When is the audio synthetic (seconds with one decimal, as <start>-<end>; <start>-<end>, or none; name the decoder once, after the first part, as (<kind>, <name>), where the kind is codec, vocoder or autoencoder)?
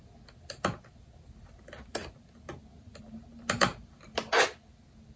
none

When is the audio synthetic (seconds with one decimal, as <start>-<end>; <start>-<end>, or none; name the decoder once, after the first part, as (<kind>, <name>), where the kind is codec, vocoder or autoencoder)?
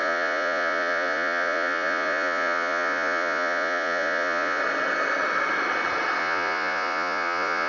0.0-4.6 (vocoder, Vocos); 6.2-7.7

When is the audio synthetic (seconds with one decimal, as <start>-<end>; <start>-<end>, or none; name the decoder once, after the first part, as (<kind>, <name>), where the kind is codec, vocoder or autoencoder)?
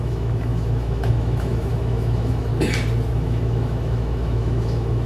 0.0-2.5 (autoencoder, DAC-VAE); 3.1-5.1